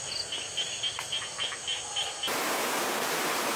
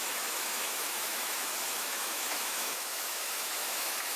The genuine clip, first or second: first